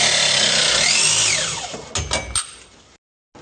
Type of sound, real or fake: real